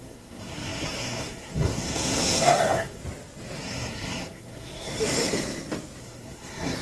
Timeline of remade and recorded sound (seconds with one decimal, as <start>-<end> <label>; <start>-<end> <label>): 0.0-3.0 remade; 3.0-3.6 recorded; 3.6-4.9 remade; 4.9-6.0 recorded; 6.0-6.8 remade

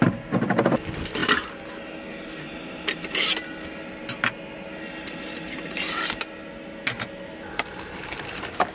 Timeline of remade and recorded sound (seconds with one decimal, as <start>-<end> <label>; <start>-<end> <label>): 0.0-8.7 recorded

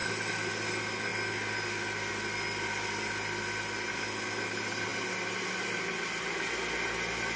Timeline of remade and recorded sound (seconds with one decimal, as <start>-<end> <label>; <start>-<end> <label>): 0.0-7.4 recorded

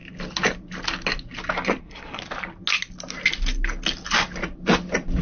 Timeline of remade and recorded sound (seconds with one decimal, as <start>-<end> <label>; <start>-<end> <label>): 0.0-1.8 recorded; 1.8-2.2 remade; 2.2-5.2 recorded

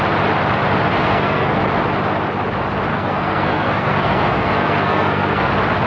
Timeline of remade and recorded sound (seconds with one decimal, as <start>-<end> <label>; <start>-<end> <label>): 0.0-0.9 recorded; 0.9-1.6 remade; 1.6-2.9 recorded; 2.9-5.5 remade; 5.5-5.9 recorded

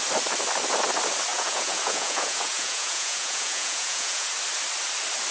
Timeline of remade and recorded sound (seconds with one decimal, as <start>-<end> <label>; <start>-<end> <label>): 0.0-1.3 recorded; 1.3-4.3 remade; 4.3-5.3 recorded